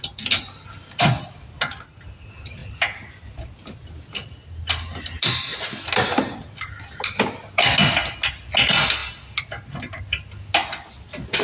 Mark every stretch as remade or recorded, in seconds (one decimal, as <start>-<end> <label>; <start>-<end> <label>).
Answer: 0.0-11.4 recorded